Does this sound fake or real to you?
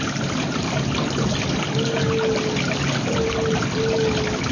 real